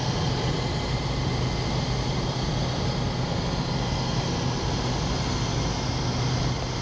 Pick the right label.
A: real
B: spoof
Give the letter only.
A